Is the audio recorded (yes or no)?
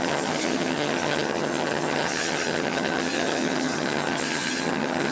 no